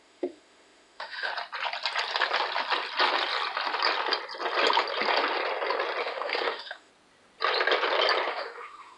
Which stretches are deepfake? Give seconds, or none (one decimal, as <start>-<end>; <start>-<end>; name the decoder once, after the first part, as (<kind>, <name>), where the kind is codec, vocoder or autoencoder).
0.0-1.3 (autoencoder, DAC-VAE); 6.0-6.9; 8.3-9.0